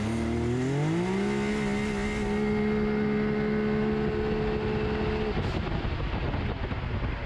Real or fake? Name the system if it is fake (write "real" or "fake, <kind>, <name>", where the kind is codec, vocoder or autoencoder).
real